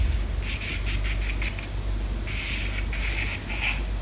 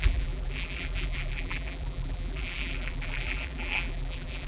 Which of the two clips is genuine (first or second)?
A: first